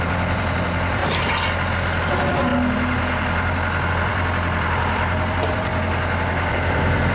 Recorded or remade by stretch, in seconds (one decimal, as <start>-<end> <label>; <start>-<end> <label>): 0.0-1.0 remade; 1.0-1.7 recorded; 1.7-2.5 remade; 2.5-3.9 recorded; 3.9-5.7 remade; 5.7-6.5 recorded; 6.5-7.1 remade

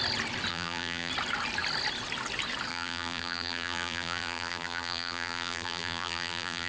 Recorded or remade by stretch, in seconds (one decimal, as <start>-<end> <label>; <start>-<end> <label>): 0.0-0.5 recorded; 0.5-1.1 remade; 1.1-2.7 recorded; 2.7-6.7 remade